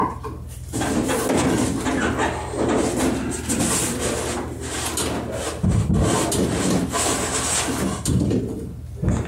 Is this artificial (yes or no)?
no